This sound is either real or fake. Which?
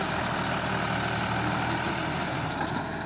real